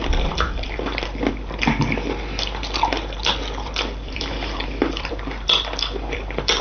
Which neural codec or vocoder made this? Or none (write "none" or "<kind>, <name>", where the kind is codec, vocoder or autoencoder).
vocoder, BigVGAN v2